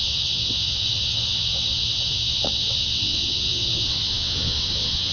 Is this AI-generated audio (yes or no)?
yes